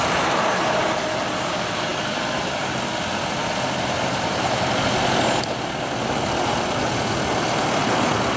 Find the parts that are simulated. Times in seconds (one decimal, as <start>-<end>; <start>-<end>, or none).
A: none